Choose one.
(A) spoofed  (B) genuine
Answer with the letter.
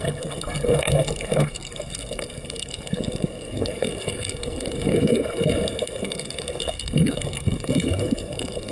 A